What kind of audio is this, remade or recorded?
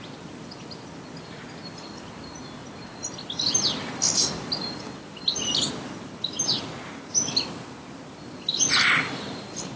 recorded